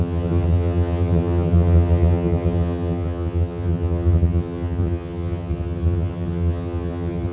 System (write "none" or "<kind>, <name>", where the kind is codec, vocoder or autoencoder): vocoder, HiFi-GAN